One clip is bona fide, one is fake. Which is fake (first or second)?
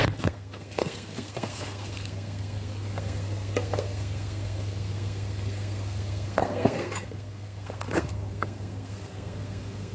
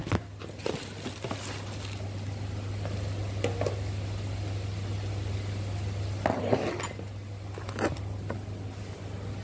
first